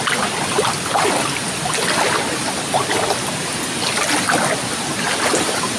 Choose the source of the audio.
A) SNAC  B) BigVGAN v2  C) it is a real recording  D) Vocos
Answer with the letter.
C